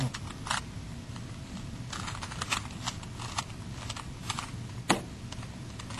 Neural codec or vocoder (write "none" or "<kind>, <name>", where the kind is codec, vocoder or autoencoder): none